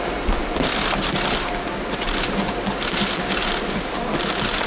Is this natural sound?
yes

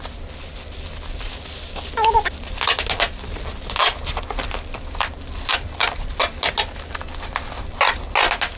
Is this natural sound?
yes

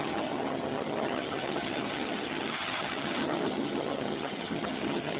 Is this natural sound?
no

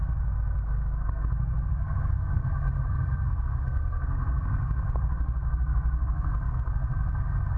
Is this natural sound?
no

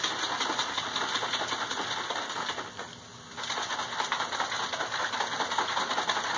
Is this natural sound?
yes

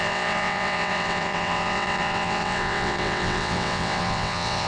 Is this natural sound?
no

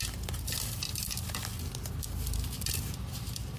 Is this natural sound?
yes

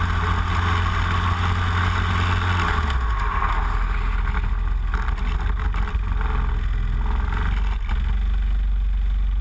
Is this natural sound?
yes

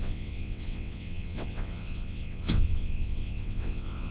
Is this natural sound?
no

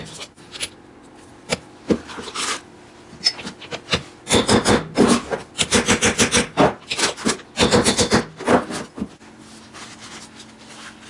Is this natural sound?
yes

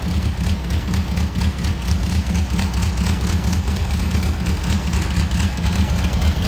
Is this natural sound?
no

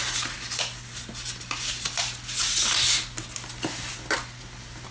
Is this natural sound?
yes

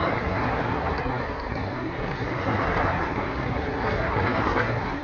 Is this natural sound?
no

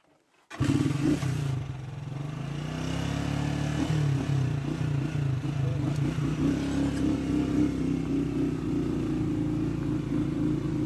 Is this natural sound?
yes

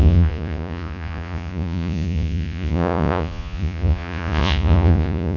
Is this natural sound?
no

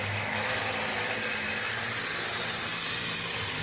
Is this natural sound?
yes